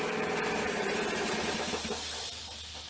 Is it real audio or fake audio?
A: fake